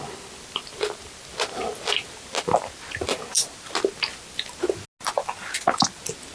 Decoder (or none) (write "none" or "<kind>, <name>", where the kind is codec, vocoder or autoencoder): none